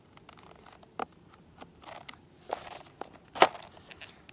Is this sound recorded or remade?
recorded